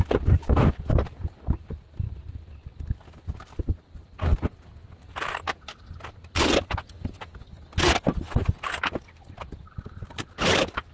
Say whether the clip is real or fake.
real